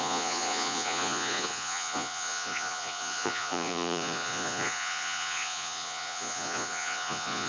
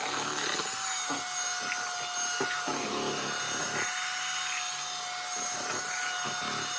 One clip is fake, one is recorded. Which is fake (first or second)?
first